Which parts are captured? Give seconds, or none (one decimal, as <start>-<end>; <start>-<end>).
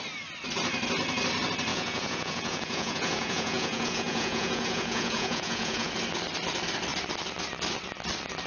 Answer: 0.0-1.7; 5.9-8.5